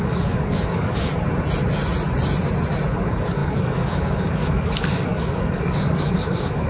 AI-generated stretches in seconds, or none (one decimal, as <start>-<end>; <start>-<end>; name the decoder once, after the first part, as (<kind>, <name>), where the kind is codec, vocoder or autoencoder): 0.0-1.1 (codec, DAC); 3.0-6.7